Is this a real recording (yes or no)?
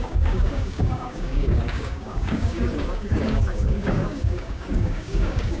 no